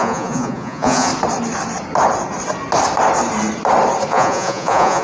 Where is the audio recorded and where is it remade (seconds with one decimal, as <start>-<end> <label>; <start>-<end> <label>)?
0.0-1.1 remade; 1.1-4.1 recorded; 4.1-5.0 remade